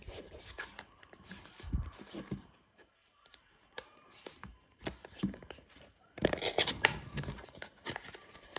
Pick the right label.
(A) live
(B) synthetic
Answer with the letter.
B